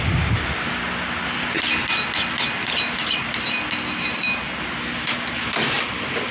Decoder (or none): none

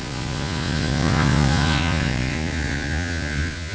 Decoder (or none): vocoder, Vocos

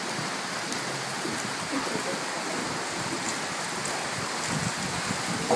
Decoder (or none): none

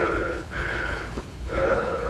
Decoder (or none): codec, HILCodec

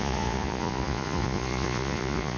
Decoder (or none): vocoder, Vocos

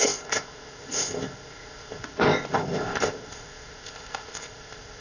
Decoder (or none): codec, ZipCodec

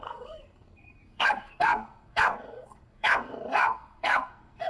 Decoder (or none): codec, SNAC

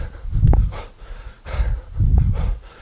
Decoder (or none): none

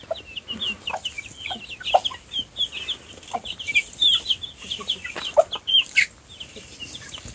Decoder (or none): none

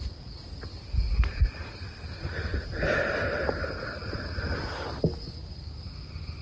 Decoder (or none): none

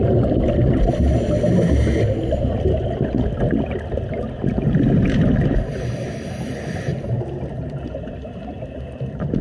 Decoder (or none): none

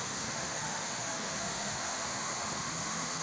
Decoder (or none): autoencoder, DAC-VAE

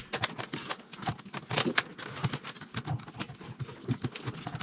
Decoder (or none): none